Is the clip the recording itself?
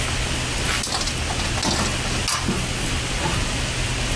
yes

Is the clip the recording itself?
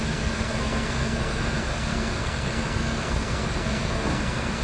no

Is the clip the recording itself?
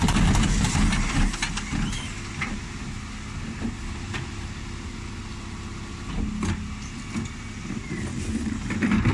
yes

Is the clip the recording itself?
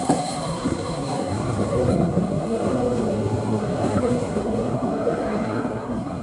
no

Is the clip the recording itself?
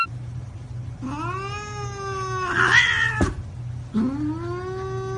yes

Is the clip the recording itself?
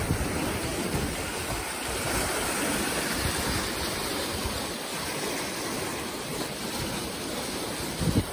yes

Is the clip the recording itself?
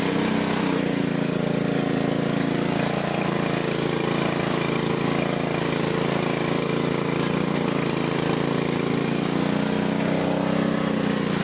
yes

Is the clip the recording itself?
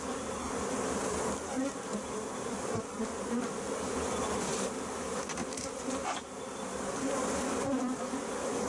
yes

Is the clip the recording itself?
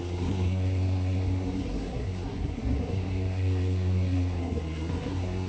no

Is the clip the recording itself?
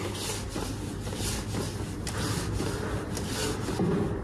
yes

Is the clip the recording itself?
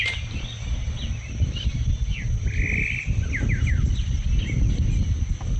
yes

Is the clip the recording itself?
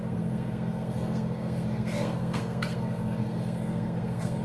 no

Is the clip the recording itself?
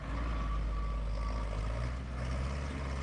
yes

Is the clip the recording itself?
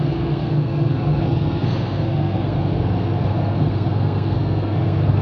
no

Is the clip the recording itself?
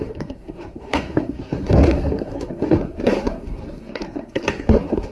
no